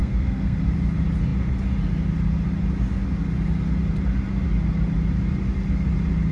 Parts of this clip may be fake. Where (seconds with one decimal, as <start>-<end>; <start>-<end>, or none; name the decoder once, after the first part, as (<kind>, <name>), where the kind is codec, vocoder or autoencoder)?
0.0-0.6 (codec, SNAC)